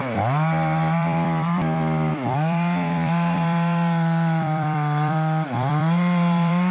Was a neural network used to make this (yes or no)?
yes